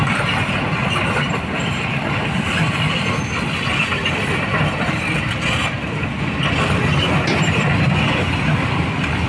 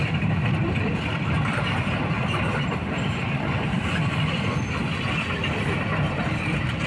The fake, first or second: second